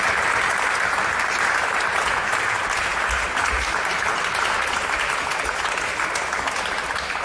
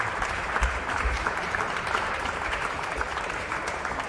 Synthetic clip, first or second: second